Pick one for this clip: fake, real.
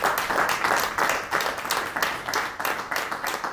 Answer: real